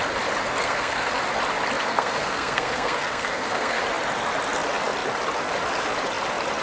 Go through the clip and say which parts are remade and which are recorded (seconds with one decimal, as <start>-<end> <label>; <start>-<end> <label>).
0.0-0.6 recorded; 0.6-1.1 remade; 1.1-1.8 recorded; 1.8-3.8 remade; 3.8-6.6 recorded

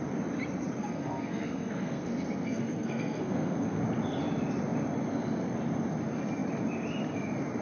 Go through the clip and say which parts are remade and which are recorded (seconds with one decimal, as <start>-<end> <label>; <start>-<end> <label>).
0.0-0.8 recorded; 0.8-3.8 remade; 3.8-7.6 recorded

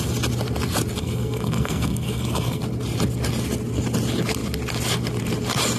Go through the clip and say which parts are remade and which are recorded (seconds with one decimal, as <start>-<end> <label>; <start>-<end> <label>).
0.0-1.0 recorded; 1.0-2.6 remade; 2.6-5.8 recorded